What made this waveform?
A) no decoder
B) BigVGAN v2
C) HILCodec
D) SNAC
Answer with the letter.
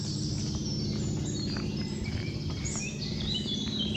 B